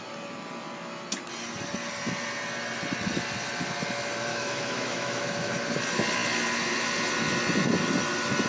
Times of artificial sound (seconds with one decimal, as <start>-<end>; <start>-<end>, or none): 4.3-5.5